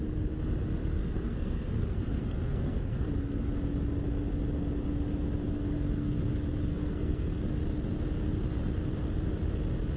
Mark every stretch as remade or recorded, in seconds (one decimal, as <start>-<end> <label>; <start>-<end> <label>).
0.0-0.8 recorded; 0.8-3.1 remade; 3.1-5.5 recorded; 5.5-6.2 remade; 6.2-6.7 recorded; 6.7-7.4 remade; 7.4-10.0 recorded

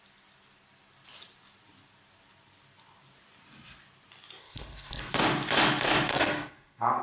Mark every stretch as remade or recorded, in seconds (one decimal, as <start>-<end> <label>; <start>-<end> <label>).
0.0-4.4 recorded; 4.4-5.1 remade; 5.1-6.1 recorded; 6.1-7.0 remade

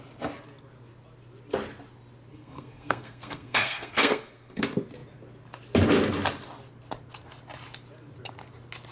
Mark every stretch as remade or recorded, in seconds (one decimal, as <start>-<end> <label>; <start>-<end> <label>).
0.0-2.3 recorded; 2.3-4.6 remade; 4.6-8.9 recorded

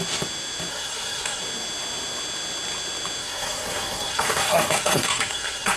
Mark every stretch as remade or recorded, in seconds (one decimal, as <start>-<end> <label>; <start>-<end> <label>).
0.0-0.7 recorded; 0.7-1.4 remade; 1.4-3.2 recorded; 3.2-5.8 remade

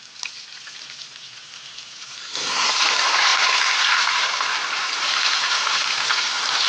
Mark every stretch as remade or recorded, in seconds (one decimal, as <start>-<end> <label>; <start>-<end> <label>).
0.0-2.2 recorded; 2.2-2.7 remade; 2.7-6.7 recorded

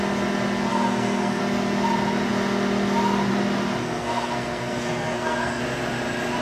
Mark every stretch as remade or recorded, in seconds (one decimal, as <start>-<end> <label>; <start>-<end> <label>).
0.0-0.7 recorded; 0.7-1.4 remade; 1.4-3.8 recorded; 3.8-5.6 remade; 5.6-6.4 recorded